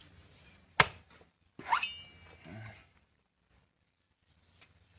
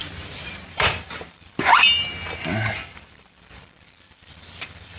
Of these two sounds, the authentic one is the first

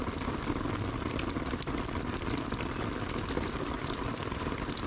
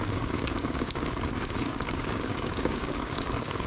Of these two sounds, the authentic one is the first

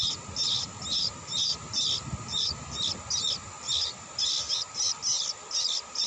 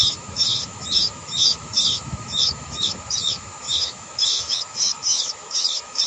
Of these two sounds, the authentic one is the first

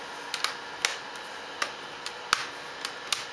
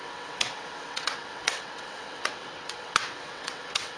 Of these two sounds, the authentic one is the first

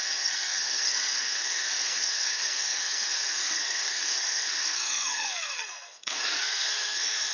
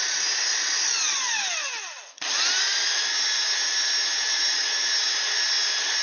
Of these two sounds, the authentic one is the second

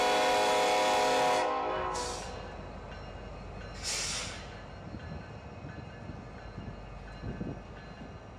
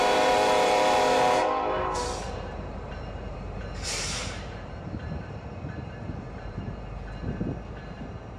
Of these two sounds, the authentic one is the first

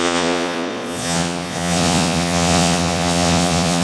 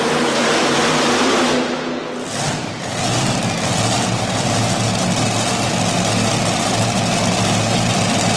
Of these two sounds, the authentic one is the second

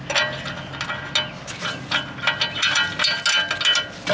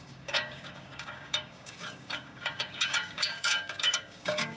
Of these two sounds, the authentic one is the first